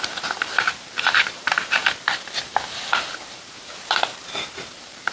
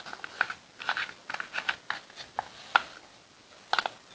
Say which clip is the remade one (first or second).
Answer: first